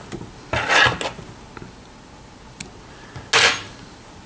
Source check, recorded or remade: recorded